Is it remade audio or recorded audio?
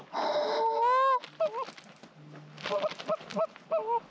recorded